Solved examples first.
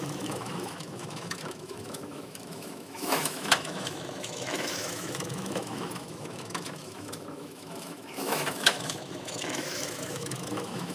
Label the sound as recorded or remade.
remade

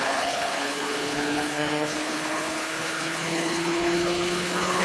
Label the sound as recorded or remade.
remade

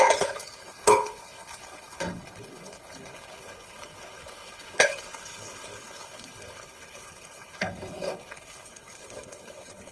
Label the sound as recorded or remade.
remade